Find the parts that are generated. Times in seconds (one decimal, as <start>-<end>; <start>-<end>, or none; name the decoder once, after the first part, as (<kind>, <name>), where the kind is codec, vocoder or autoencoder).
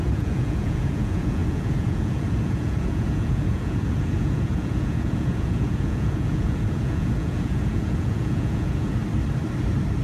0.0-9.0 (vocoder, Vocos)